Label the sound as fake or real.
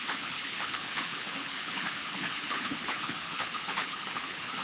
fake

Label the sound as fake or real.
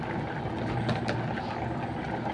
real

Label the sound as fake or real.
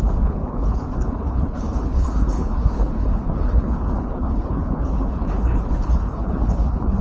fake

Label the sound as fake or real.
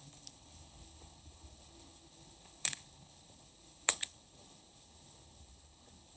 fake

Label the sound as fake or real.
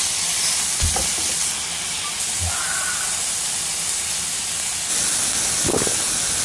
real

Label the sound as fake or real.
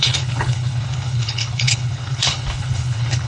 fake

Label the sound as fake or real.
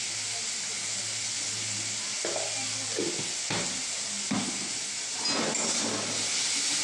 real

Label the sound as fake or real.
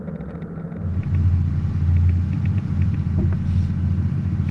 real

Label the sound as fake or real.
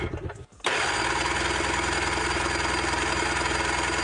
real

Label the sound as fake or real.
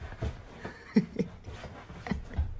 real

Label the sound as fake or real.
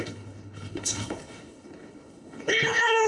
fake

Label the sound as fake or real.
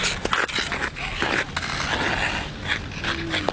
real